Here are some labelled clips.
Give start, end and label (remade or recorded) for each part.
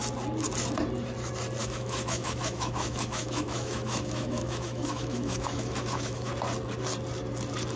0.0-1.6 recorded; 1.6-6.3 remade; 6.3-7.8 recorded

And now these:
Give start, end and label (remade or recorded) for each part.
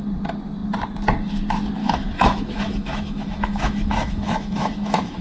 0.0-1.8 recorded; 1.8-5.2 remade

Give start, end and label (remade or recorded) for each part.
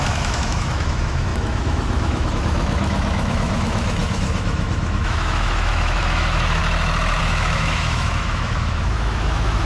0.0-6.6 remade; 6.6-7.2 recorded; 7.2-9.7 remade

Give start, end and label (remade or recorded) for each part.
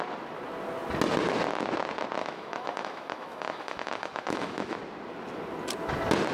0.0-2.2 recorded; 2.2-4.8 remade; 4.8-6.3 recorded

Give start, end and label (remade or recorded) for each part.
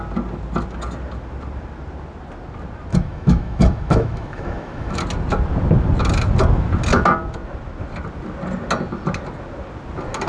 0.0-2.9 recorded; 2.9-5.0 remade; 5.0-10.3 recorded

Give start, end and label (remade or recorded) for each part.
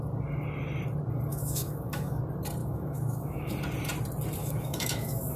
0.0-1.3 recorded; 1.3-2.2 remade; 2.2-2.6 recorded; 2.6-3.5 remade; 3.5-4.4 recorded; 4.4-5.4 remade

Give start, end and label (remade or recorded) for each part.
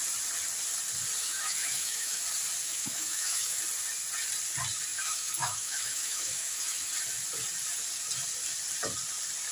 0.0-1.2 recorded; 1.2-2.2 remade; 2.2-2.6 recorded; 2.6-3.6 remade; 3.6-4.9 recorded; 4.9-6.9 remade; 6.9-9.5 recorded